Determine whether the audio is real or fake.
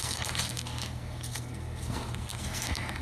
fake